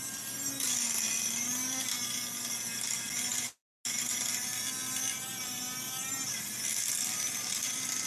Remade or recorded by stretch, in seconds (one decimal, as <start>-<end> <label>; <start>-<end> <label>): 0.0-8.1 recorded